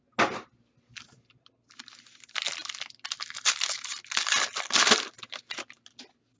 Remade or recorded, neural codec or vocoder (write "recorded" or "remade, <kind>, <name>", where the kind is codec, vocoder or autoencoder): recorded